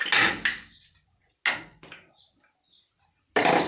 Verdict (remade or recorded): recorded